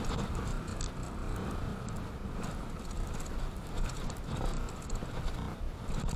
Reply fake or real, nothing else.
real